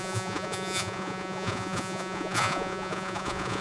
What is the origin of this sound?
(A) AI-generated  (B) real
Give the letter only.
A